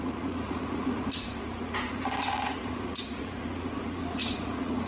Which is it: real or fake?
fake